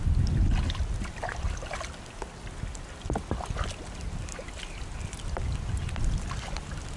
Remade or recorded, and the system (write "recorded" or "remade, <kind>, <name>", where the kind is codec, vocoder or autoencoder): recorded